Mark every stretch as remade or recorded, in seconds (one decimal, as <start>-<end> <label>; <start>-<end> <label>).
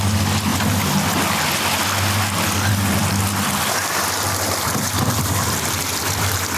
0.0-3.8 recorded; 3.8-6.6 remade